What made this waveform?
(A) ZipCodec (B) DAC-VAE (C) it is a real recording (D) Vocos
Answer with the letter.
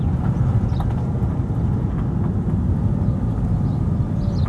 C